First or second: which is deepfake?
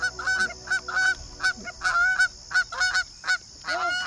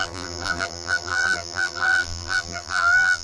second